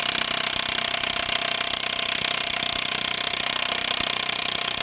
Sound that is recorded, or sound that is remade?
recorded